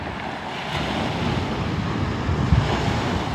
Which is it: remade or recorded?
recorded